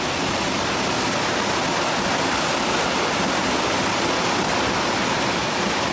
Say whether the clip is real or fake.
real